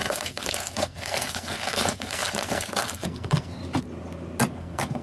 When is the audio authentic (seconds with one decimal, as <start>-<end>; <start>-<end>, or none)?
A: 3.6-4.5